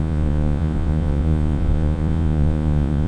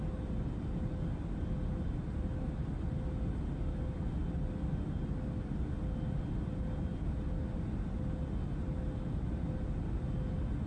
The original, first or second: second